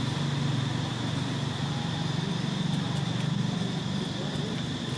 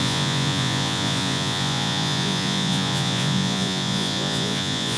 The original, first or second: first